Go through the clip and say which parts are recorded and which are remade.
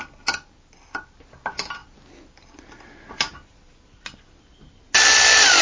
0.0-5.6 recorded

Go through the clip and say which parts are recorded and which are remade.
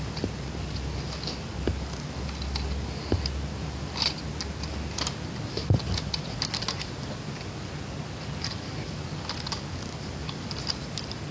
0.0-11.3 recorded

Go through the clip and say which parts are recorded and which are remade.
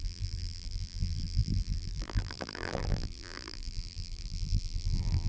0.0-5.3 remade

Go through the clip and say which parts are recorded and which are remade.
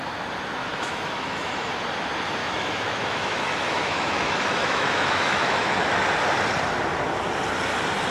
0.0-0.6 recorded; 0.6-1.7 remade; 1.7-2.4 recorded; 2.4-5.9 remade; 5.9-8.1 recorded